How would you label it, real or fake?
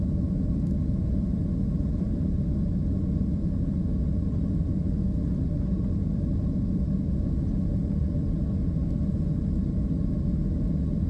real